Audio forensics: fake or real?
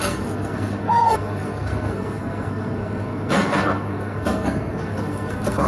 fake